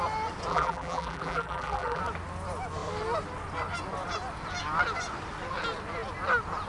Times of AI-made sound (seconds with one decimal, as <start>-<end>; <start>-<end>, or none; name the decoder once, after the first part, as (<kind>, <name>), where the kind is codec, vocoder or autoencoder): 0.5-2.0 (vocoder, BigVGAN v2)